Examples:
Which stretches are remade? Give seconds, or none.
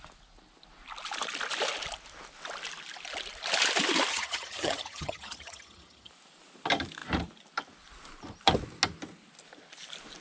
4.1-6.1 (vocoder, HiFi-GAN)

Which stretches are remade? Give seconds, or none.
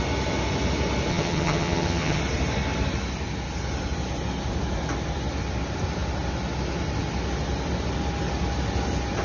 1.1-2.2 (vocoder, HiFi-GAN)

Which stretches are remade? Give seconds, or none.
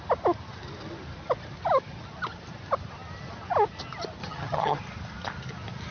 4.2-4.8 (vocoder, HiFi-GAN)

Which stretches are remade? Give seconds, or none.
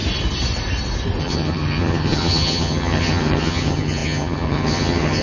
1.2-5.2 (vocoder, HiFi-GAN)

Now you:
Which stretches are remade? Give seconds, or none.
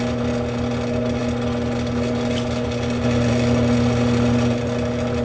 none